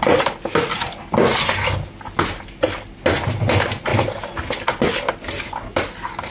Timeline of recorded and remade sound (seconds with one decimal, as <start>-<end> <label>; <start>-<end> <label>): 0.0-6.3 recorded